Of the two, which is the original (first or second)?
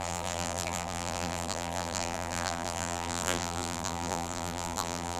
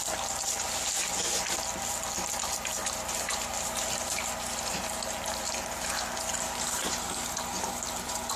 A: second